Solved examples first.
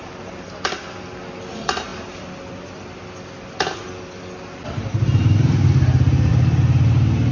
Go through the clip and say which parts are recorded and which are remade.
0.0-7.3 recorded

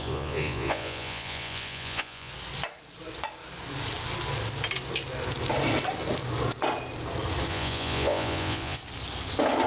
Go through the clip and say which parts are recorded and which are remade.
0.0-2.3 remade; 2.3-7.5 recorded; 7.5-8.8 remade; 8.8-9.7 recorded

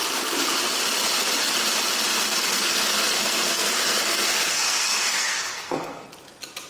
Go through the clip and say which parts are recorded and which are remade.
0.0-2.1 recorded; 2.1-6.1 remade; 6.1-6.7 recorded

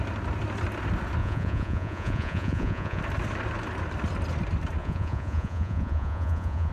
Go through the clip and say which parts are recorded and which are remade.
0.0-1.2 recorded; 1.2-3.0 remade; 3.0-4.8 recorded; 4.8-6.7 remade

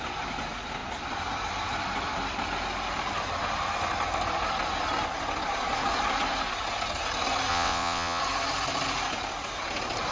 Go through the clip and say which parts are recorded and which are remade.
0.0-7.5 recorded; 7.5-8.2 remade; 8.2-10.1 recorded

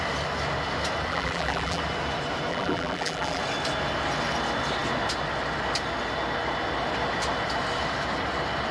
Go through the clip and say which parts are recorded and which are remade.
0.0-1.1 recorded; 1.1-1.8 remade; 1.8-2.5 recorded; 2.5-3.4 remade; 3.4-8.7 recorded

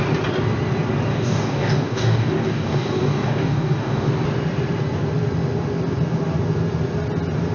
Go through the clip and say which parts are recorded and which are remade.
0.0-1.1 recorded; 1.1-4.1 remade; 4.1-7.5 recorded